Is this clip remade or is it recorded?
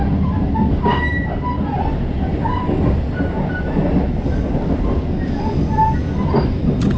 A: recorded